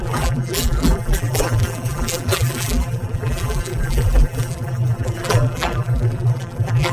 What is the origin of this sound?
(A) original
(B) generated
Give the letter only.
B